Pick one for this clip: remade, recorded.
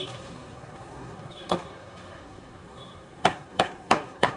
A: remade